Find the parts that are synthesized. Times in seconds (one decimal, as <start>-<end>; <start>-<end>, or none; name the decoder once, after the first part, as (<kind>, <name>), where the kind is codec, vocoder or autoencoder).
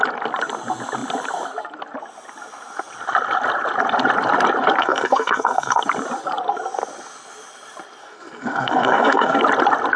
4.8-5.8 (codec, SNAC); 8.0-9.4